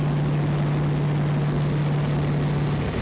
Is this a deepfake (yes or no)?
no